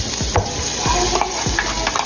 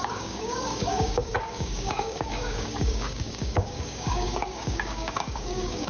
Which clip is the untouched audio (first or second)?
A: first